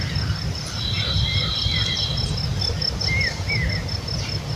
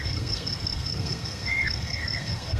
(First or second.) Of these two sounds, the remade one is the second